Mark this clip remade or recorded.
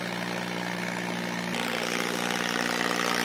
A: recorded